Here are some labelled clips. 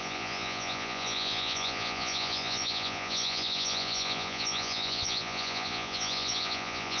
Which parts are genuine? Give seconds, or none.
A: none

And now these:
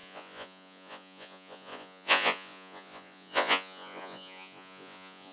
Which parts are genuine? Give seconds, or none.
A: none

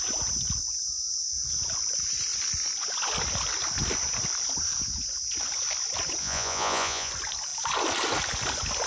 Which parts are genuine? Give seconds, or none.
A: 0.0-6.2; 7.1-8.9

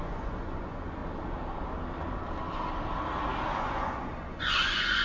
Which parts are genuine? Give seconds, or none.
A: 1.0-3.6

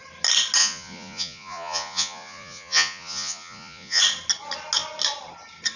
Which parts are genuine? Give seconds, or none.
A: 0.0-0.6; 4.0-5.8

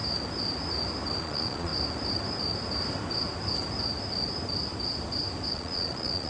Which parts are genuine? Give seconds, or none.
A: 0.0-1.2; 1.7-5.5